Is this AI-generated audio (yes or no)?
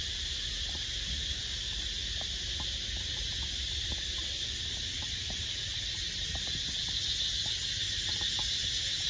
no